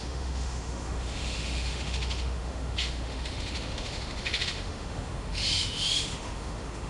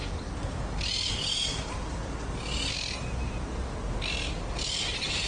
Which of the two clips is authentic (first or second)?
second